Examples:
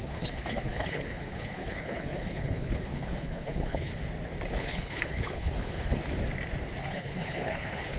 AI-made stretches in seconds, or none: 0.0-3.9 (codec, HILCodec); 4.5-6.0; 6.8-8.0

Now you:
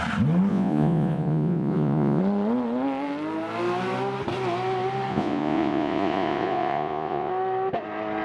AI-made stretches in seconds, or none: 0.5-2.2 (vocoder, Vocos); 5.1-7.3

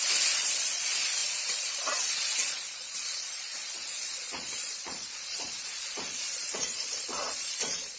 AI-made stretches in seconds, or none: 0.0-8.0 (vocoder, Vocos)

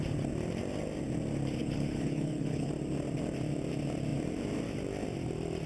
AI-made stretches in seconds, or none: 1.6-2.7 (codec, HILCodec)